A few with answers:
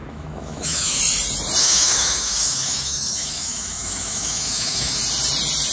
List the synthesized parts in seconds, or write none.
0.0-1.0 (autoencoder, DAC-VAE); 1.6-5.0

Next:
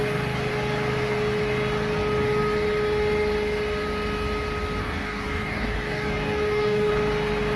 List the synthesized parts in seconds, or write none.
4.8-6.9 (codec, DAC)

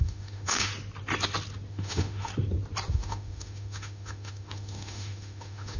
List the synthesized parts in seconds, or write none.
0.0-0.7 (autoencoder, DAC-VAE); 1.7-2.3; 2.9-5.8

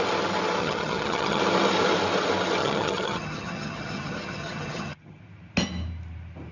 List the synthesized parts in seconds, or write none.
0.6-1.4 (vocoder, HiFi-GAN); 2.6-5.2